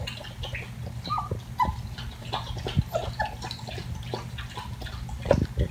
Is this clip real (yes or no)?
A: yes